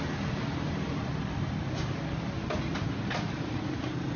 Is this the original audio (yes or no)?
yes